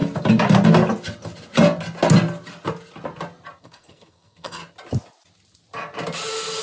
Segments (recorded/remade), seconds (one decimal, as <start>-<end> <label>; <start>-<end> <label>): 0.0-3.6 recorded; 3.6-4.6 remade; 4.6-6.6 recorded